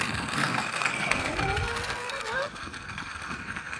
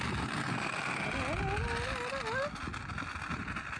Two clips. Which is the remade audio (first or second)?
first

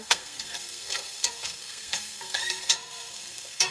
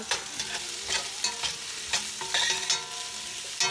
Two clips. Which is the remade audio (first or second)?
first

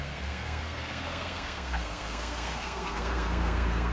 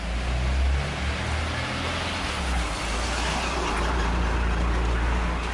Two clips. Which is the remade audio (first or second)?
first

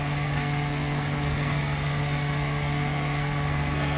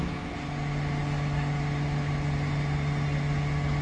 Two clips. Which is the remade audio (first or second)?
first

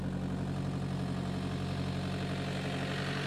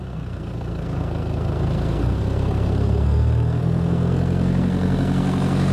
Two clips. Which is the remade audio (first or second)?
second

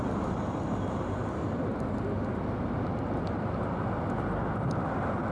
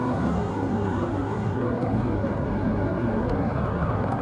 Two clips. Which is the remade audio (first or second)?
second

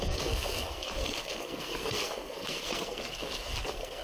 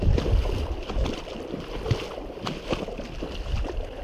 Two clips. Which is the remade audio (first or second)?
first